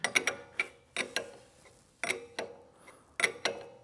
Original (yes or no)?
yes